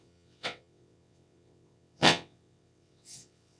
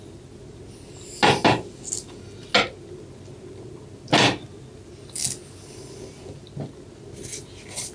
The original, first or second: second